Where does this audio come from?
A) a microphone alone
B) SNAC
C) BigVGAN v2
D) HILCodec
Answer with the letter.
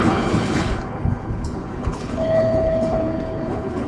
D